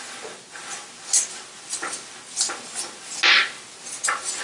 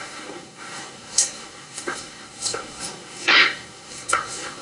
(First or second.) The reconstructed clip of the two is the second